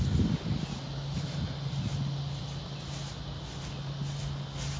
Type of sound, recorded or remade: recorded